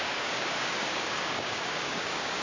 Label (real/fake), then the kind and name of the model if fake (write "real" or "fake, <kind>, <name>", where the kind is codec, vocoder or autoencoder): fake, codec, DAC